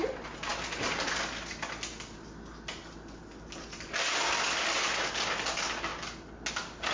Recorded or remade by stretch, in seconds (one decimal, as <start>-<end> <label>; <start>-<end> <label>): 0.0-6.9 recorded